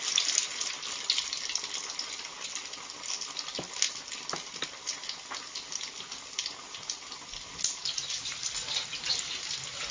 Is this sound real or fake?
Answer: real